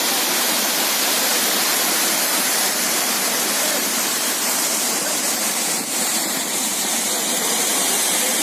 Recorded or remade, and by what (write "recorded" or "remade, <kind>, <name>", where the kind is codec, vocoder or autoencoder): remade, vocoder, BigVGAN v2